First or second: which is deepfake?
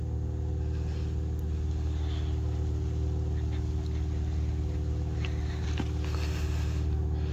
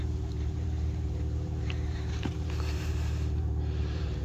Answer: second